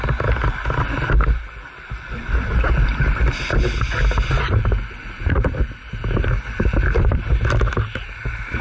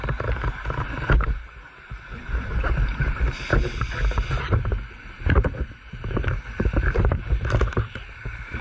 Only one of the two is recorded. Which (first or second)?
first